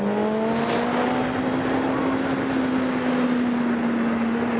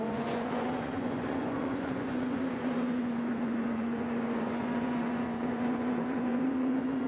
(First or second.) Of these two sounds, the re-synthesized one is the second